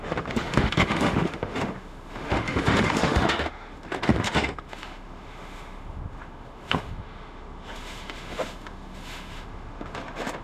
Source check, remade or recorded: remade